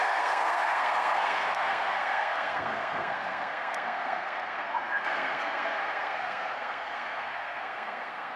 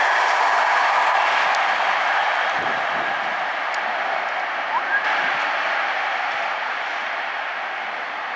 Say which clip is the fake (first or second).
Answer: first